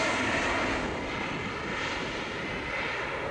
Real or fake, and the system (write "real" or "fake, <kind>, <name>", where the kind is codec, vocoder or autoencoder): real